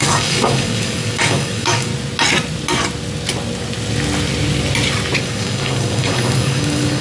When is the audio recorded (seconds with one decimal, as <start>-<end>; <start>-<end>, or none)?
1.9-5.2